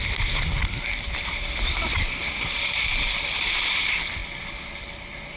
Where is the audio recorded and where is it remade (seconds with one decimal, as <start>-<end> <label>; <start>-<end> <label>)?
0.0-5.4 recorded